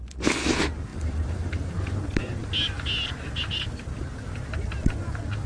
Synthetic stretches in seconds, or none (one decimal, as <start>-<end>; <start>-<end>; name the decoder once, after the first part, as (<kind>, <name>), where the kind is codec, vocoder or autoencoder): 0.9-1.7 (vocoder, BigVGAN v2)